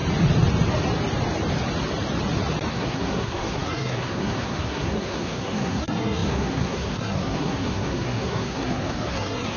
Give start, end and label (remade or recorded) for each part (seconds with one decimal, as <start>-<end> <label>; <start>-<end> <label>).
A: 0.0-2.7 recorded; 2.7-9.6 remade